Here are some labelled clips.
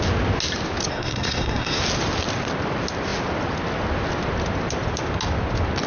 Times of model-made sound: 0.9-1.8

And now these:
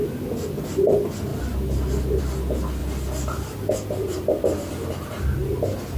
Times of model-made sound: none